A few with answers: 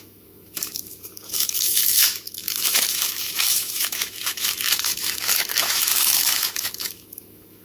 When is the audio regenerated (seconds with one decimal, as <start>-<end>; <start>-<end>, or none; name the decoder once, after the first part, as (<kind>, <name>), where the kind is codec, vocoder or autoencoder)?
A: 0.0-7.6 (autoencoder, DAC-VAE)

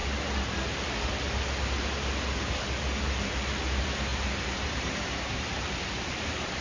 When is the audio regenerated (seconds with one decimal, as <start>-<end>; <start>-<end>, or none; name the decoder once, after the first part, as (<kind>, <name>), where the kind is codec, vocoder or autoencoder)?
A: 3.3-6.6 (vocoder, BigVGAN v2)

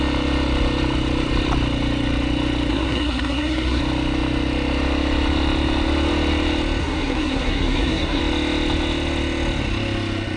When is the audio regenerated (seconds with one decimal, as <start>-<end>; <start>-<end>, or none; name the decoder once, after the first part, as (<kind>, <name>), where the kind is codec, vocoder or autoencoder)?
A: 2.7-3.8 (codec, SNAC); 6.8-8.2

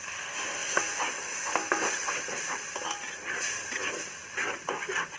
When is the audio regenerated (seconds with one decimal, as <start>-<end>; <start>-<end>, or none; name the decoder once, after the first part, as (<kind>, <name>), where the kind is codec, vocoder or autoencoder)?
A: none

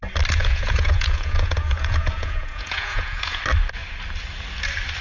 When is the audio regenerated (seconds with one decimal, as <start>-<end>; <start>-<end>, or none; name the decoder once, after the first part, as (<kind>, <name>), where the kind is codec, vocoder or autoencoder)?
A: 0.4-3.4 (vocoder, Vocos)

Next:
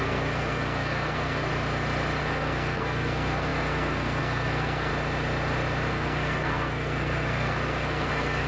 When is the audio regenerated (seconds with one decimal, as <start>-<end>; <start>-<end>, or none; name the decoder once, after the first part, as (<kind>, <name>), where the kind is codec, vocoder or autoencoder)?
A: 0.0-1.5 (codec, SNAC); 2.2-4.9; 5.9-8.5

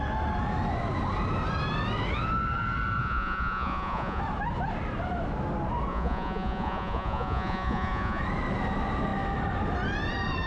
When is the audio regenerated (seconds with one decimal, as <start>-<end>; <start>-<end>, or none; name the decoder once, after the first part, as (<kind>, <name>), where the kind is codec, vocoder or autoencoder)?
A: 3.0-4.2 (vocoder, Vocos); 5.9-8.2